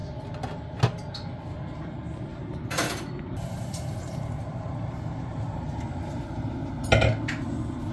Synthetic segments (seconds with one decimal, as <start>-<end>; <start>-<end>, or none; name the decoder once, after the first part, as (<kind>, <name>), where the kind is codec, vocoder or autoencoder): 2.3-6.7 (vocoder, BigVGAN v2)